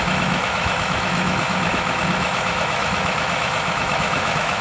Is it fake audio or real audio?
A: fake